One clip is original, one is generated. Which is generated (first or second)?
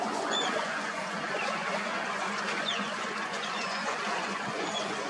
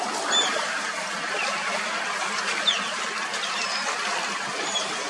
first